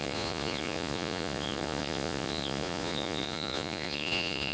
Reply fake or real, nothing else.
fake